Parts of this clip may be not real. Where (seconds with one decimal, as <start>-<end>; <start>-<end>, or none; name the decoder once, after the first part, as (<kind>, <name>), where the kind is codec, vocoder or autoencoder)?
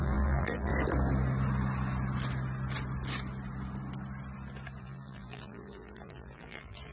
0.0-0.7 (vocoder, BigVGAN v2); 4.8-6.9